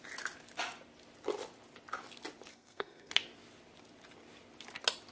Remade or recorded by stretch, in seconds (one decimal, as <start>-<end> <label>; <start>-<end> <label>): 0.0-2.5 recorded; 2.5-3.1 remade; 3.1-5.1 recorded